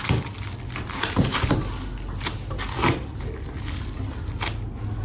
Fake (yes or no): no